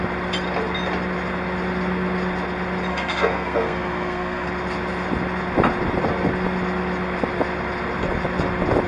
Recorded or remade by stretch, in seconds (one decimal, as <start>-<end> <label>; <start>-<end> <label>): 0.0-2.9 recorded; 2.9-4.5 remade; 4.5-8.9 recorded